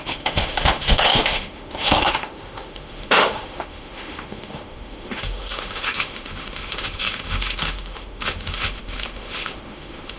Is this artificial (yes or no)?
yes